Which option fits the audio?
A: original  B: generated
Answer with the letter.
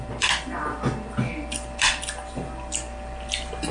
A